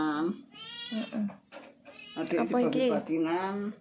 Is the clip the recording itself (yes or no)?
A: yes